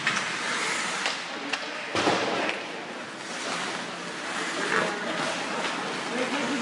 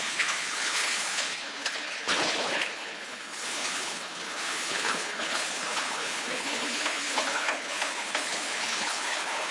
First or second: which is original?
first